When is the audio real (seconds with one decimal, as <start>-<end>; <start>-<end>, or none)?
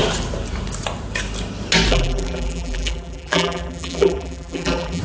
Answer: 0.0-1.9